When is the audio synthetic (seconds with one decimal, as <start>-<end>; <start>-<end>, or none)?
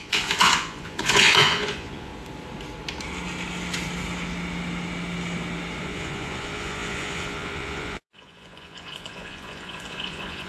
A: 0.0-2.1; 5.8-10.5